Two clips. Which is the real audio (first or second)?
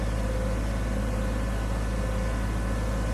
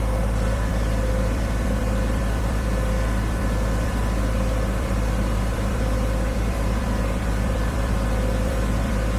first